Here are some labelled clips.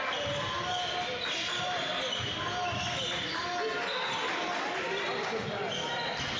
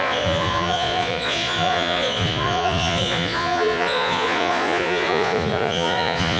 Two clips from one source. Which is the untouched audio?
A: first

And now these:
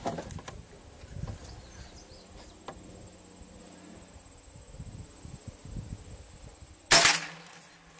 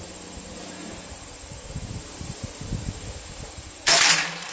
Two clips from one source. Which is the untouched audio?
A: first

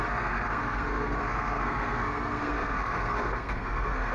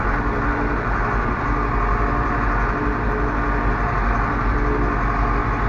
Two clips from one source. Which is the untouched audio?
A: second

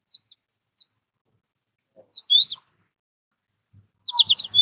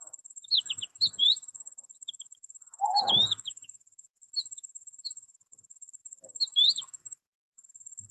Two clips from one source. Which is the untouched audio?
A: first